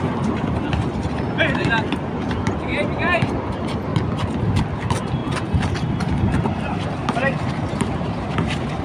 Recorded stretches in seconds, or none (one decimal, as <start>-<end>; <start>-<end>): 0.0-2.7; 3.4-5.2